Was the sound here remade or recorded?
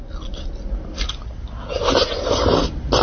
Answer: recorded